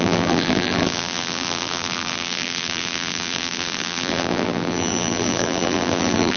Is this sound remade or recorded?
remade